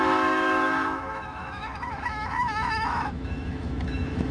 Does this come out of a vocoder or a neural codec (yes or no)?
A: yes